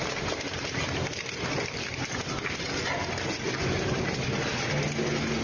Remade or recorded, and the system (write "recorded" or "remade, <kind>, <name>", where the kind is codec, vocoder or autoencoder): recorded